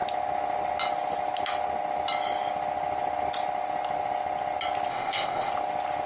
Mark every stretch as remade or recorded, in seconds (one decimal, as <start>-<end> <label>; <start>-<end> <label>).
0.0-4.9 recorded; 4.9-5.5 remade; 5.5-6.1 recorded